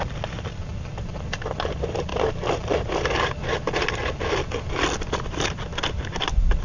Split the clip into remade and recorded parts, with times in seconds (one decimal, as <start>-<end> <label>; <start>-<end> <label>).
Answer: 0.0-6.6 recorded